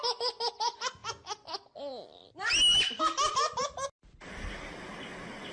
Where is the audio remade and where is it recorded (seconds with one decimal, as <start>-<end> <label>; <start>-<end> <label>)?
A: 0.0-5.5 recorded